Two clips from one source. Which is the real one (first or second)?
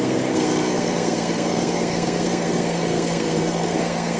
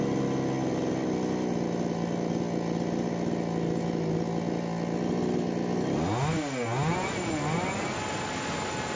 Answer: second